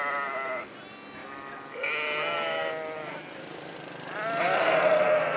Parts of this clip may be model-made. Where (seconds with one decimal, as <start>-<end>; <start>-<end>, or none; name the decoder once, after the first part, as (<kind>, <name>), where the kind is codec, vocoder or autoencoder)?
none